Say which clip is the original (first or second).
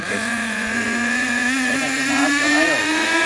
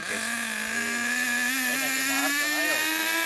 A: second